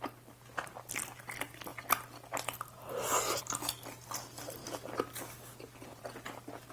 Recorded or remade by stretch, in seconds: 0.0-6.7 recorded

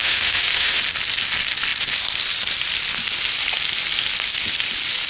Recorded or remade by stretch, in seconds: 0.0-0.8 remade; 0.8-5.1 recorded

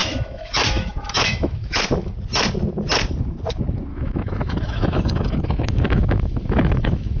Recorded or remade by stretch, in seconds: 0.0-1.8 remade; 1.8-3.9 recorded; 3.9-7.2 remade

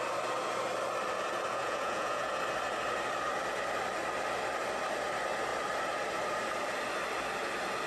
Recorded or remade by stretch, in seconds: 0.0-1.5 recorded; 1.5-2.4 remade; 2.4-7.9 recorded

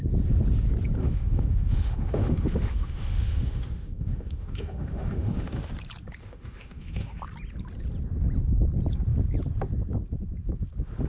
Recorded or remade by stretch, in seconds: 0.0-1.0 recorded; 1.0-5.7 remade; 5.7-6.2 recorded; 6.2-7.2 remade; 7.2-11.1 recorded

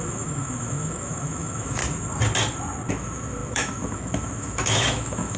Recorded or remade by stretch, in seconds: 0.0-1.8 remade; 1.8-2.9 recorded; 2.9-5.4 remade

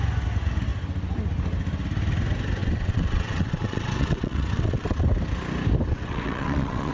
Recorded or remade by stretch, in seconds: 0.0-2.6 recorded; 2.6-5.0 remade; 5.0-5.9 recorded; 5.9-6.9 remade

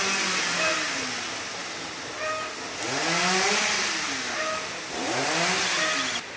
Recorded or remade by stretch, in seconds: 0.0-6.4 recorded